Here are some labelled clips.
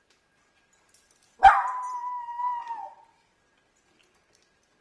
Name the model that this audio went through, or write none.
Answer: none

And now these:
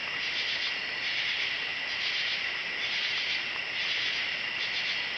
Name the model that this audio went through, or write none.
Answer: none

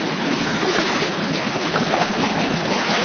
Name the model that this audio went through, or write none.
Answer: codec, HILCodec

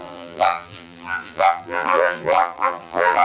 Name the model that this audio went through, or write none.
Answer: vocoder, BigVGAN v2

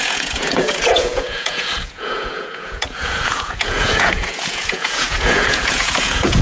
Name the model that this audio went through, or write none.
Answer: vocoder, Vocos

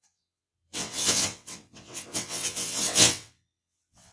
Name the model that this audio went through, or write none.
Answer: vocoder, WaveNeXt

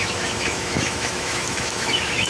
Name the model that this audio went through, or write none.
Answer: autoencoder, DAC-VAE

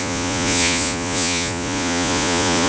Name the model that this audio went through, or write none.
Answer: vocoder, Vocos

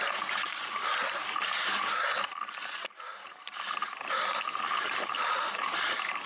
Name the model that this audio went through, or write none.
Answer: none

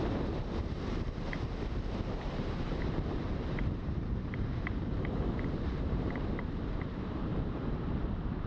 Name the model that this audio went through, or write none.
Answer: vocoder, BigVGAN v2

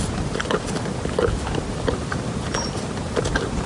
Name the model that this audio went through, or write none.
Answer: none